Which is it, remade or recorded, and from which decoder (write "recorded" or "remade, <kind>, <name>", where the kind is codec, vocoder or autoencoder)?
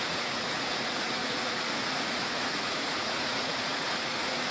remade, vocoder, Vocos